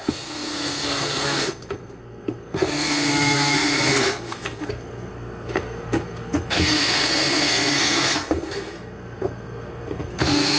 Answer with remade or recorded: remade